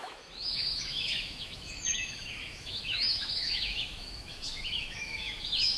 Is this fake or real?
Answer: fake